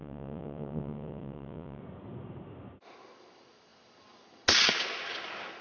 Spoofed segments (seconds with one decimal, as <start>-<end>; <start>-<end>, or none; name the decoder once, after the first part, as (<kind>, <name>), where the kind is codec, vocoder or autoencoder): 0.0-1.8 (vocoder, WaveNeXt)